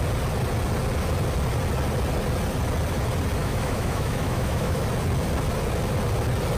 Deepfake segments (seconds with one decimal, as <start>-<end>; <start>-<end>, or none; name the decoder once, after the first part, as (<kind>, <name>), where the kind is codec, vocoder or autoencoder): 3.4-4.8 (autoencoder, DAC-VAE)

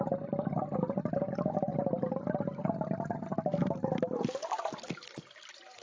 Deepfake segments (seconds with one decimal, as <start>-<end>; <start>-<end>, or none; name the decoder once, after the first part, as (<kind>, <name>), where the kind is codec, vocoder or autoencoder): none